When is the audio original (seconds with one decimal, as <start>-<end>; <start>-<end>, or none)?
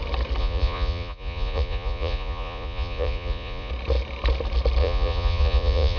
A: 0.0-0.4; 3.7-4.8